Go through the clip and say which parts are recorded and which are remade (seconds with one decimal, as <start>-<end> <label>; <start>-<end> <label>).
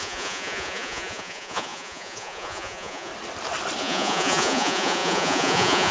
0.0-3.1 remade; 3.1-3.8 recorded; 3.8-5.9 remade